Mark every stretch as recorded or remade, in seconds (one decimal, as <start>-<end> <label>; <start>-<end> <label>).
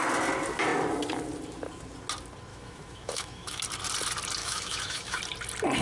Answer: 0.0-2.5 recorded; 2.5-3.6 remade; 3.6-4.4 recorded; 4.4-5.2 remade; 5.2-5.8 recorded